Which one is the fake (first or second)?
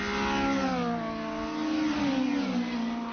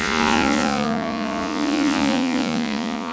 second